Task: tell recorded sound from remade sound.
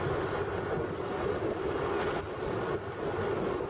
recorded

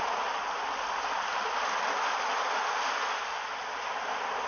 recorded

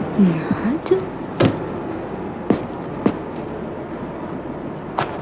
recorded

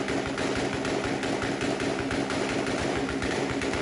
recorded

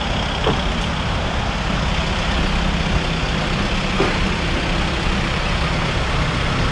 recorded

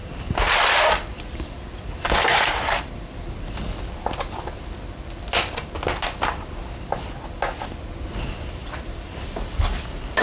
remade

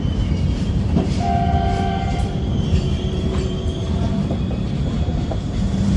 remade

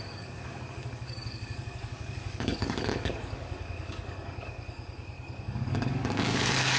remade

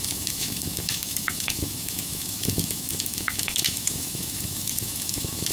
remade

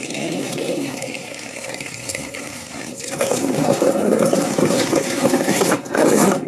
remade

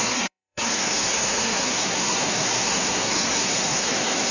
remade